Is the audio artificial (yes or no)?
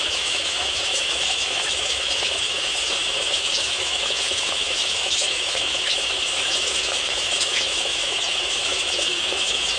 yes